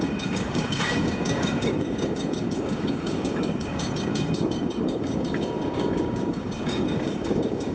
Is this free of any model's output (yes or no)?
no